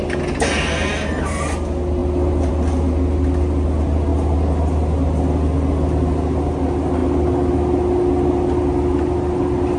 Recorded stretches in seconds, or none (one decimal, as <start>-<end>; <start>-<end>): 0.0-9.8